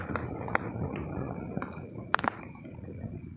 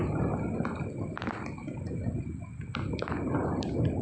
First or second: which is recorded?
second